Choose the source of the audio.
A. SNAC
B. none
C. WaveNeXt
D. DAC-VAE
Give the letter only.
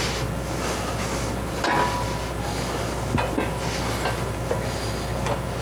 B